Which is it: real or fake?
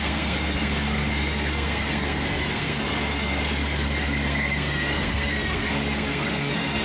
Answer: fake